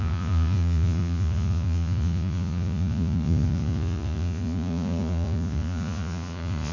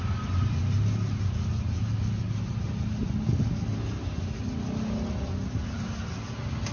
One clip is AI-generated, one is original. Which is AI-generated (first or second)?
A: first